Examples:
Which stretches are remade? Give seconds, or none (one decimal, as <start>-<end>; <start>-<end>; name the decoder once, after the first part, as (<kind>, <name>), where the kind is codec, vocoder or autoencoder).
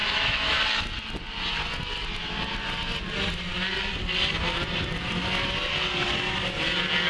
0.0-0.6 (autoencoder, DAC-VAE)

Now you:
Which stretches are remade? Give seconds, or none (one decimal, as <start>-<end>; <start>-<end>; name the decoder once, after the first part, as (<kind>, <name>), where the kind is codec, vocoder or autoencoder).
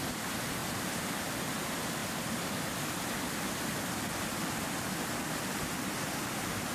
none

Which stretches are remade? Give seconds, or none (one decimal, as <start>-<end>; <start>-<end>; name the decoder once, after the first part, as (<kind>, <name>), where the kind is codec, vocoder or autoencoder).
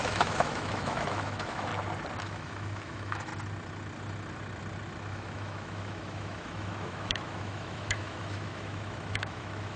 0.0-1.7 (autoencoder, DAC-VAE); 2.2-3.3; 5.1-9.8